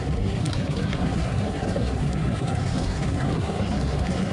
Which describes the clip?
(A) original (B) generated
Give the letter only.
B